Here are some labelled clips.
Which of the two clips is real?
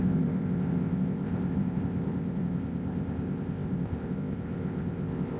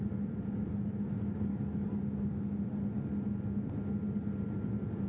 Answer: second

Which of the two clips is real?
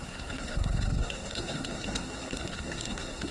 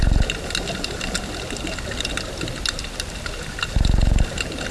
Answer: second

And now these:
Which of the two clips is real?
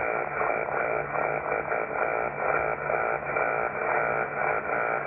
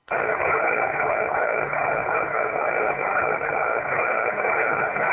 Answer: first